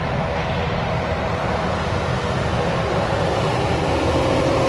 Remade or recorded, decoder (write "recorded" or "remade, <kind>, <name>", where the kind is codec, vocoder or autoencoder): recorded